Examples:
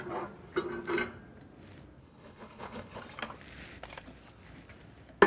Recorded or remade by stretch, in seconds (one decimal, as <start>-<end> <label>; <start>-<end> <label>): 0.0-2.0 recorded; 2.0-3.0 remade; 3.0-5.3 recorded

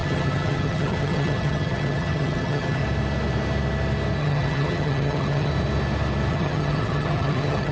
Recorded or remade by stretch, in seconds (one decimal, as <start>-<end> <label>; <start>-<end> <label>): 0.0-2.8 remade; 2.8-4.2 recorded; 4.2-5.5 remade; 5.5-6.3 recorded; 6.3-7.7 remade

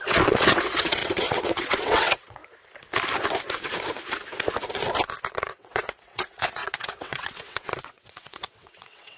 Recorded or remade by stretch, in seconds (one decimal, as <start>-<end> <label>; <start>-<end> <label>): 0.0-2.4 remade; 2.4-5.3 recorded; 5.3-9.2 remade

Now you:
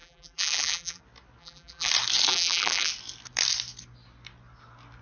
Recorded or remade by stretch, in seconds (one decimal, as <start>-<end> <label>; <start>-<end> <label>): 0.0-1.0 remade; 1.0-1.4 recorded; 1.4-1.9 remade; 1.9-2.3 recorded; 2.3-2.9 remade; 2.9-5.0 recorded

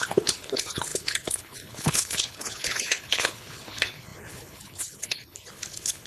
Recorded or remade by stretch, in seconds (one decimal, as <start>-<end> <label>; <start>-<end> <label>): 0.0-6.1 remade